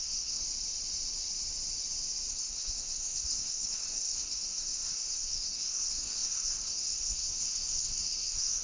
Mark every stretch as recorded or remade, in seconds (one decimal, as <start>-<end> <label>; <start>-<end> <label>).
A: 0.0-0.4 remade; 0.4-2.3 recorded; 2.3-8.6 remade